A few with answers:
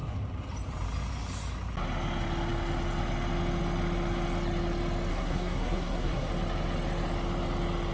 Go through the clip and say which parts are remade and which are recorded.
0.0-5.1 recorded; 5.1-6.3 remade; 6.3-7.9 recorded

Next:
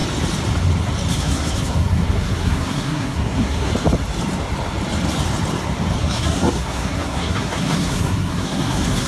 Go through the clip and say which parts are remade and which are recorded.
0.0-1.1 recorded; 1.1-3.7 remade; 3.7-6.0 recorded; 6.0-9.1 remade

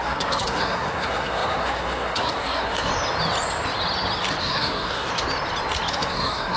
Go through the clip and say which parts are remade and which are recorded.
0.0-2.9 remade; 2.9-4.4 recorded; 4.4-5.1 remade; 5.1-5.9 recorded; 5.9-6.6 remade